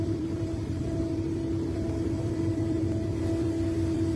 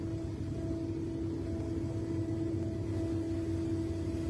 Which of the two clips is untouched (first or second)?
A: second